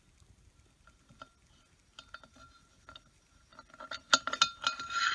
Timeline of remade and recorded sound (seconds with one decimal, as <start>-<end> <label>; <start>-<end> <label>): 0.0-5.1 recorded